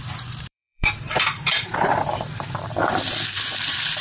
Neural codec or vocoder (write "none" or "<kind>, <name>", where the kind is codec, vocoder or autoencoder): vocoder, BigVGAN v2